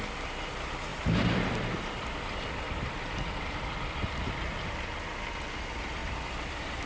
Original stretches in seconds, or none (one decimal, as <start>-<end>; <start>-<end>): 0.0-0.9; 4.6-6.0